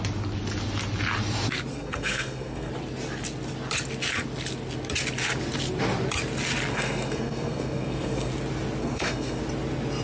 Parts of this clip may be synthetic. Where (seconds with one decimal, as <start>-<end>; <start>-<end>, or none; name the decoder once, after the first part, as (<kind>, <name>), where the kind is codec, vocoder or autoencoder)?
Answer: 1.7-2.7 (codec, SNAC); 6.7-8.3; 8.8-9.4